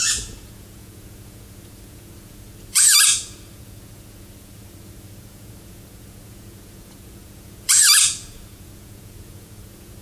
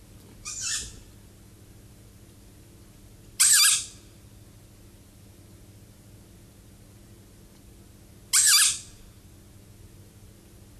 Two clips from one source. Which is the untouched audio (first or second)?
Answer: second